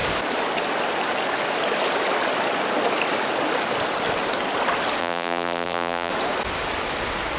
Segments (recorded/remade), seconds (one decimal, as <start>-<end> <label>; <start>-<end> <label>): 0.0-5.0 recorded; 5.0-6.1 remade; 6.1-7.4 recorded